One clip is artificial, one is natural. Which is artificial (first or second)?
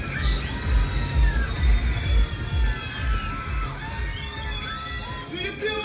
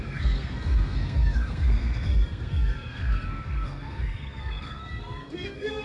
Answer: second